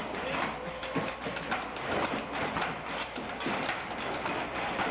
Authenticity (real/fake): real